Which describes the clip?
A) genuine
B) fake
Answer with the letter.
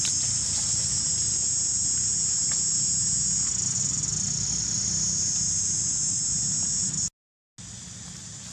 A